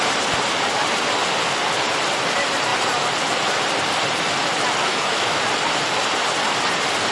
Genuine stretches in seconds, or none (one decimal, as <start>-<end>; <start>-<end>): 0.0-4.8; 5.4-7.1